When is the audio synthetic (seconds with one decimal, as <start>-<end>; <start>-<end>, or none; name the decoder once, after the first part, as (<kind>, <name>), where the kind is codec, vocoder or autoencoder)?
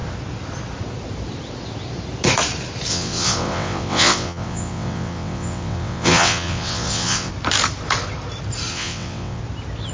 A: 2.9-7.3 (vocoder, WaveNeXt); 8.7-9.4